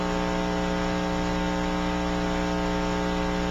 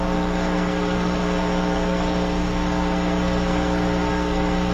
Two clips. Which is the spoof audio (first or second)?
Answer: second